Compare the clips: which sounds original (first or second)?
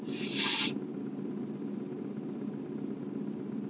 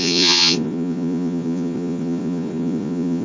first